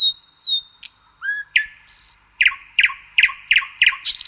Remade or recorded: remade